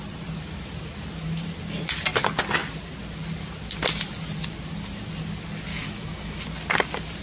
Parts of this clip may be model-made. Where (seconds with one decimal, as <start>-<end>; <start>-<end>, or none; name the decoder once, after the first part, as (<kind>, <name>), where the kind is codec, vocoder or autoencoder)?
5.7-6.4 (autoencoder, DAC-VAE)